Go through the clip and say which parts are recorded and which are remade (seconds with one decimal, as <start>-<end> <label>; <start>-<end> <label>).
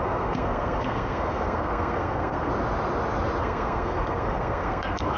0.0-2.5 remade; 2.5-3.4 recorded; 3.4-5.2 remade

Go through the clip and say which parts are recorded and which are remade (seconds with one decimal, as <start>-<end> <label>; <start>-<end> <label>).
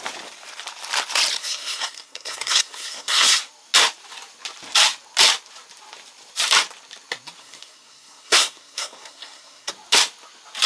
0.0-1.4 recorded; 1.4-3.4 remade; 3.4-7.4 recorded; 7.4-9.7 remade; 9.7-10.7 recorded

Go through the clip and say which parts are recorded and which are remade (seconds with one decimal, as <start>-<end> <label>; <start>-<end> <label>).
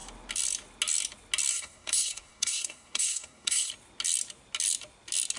0.0-1.5 recorded; 1.5-3.7 remade; 3.7-5.4 recorded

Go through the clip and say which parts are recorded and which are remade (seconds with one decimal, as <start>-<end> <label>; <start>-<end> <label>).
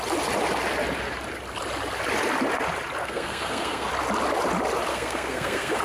0.0-3.0 recorded; 3.0-3.9 remade; 3.9-4.9 recorded; 4.9-5.8 remade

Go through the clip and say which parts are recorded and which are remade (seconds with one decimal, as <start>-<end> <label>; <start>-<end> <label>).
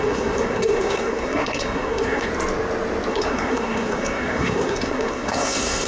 0.0-2.3 remade; 2.3-3.1 recorded; 3.1-5.9 remade